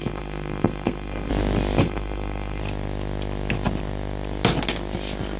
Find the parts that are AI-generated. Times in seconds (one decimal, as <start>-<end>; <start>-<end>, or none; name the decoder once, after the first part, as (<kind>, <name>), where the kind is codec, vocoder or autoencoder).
0.0-1.3 (codec, SNAC); 1.8-2.6